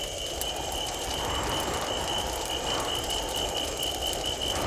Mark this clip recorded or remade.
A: recorded